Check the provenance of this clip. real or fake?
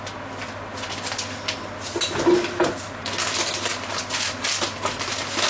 real